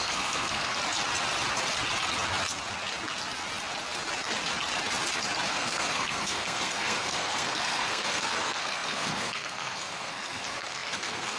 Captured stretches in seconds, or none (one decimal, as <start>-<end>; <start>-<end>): 0.7-5.5

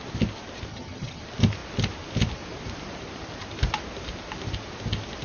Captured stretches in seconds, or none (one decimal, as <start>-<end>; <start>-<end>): 0.0-0.7; 1.2-5.2

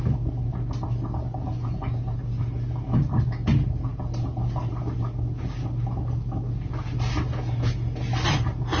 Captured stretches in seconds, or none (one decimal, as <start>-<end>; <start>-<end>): 0.0-8.8

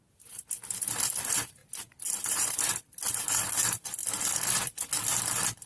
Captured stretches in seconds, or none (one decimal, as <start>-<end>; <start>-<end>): 0.0-1.6; 3.6-5.7

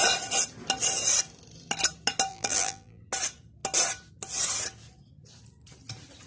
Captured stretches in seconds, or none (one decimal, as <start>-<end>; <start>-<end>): 0.0-2.3; 3.0-6.3

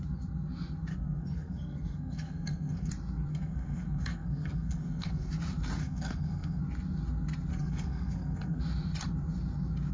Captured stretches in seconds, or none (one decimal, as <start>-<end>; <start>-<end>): 0.0-0.9; 2.9-3.3; 5.3-5.8; 6.6-7.5; 8.6-9.9

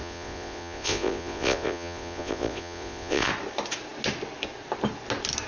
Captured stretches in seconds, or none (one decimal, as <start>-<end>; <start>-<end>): 3.3-5.5

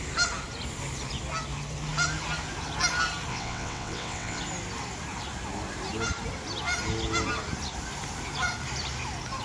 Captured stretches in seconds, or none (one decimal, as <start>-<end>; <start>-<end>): 0.0-3.3; 4.4-9.4